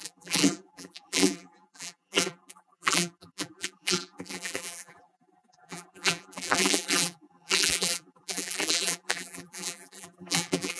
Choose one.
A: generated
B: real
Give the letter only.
A